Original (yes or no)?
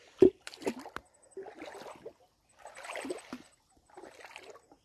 yes